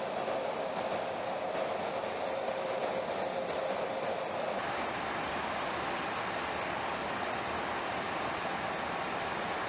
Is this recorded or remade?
recorded